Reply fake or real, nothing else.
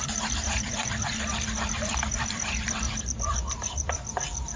fake